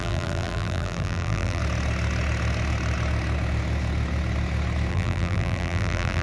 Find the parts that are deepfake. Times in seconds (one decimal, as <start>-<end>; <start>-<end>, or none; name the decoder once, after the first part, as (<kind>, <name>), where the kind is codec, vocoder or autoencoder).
0.0-1.6 (vocoder, BigVGAN v2); 4.9-6.2